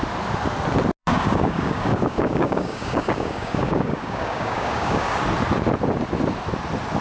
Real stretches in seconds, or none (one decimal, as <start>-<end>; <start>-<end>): 0.0-1.0; 5.2-7.0